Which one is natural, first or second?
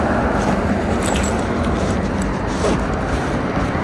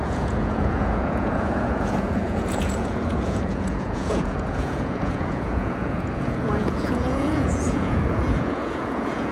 first